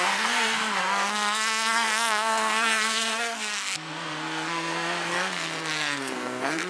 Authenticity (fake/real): fake